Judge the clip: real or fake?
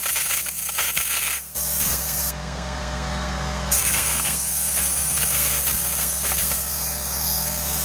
fake